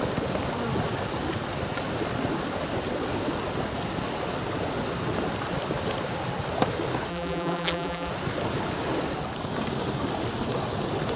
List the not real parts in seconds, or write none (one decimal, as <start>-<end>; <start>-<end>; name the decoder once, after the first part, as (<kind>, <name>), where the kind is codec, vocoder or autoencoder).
7.1-8.1 (vocoder, BigVGAN v2)